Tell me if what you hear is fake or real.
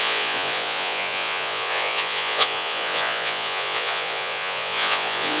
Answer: fake